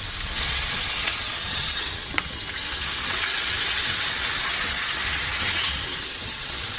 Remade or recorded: remade